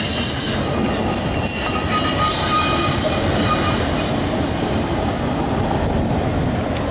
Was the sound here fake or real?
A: real